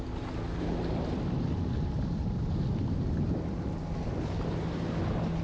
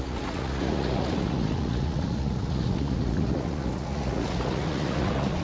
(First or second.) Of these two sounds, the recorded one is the first